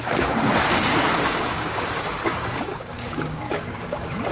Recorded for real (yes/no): no